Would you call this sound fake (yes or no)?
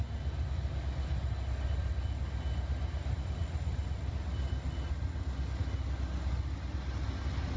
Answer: no